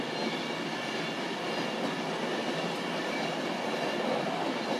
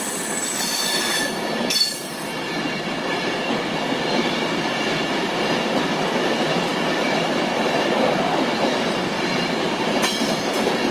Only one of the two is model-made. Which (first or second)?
second